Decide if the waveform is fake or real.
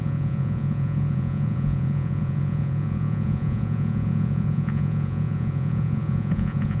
fake